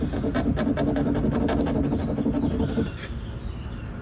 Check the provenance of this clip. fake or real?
real